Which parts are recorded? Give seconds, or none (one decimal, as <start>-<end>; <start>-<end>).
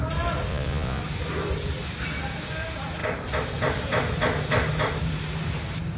0.0-0.5; 1.0-6.0